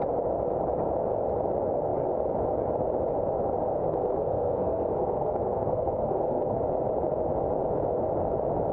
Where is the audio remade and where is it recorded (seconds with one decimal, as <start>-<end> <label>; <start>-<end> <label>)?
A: 0.0-3.7 recorded; 3.7-6.6 remade; 6.6-8.7 recorded